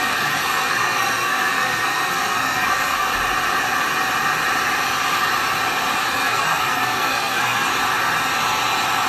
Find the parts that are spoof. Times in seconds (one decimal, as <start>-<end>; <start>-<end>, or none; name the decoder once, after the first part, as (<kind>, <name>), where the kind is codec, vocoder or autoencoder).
0.0-3.1 (codec, SNAC); 6.1-7.7